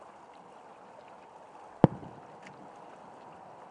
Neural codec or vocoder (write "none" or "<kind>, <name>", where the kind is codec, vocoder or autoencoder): none